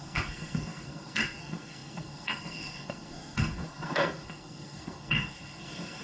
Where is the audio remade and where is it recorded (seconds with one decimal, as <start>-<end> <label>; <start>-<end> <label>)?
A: 0.0-6.0 remade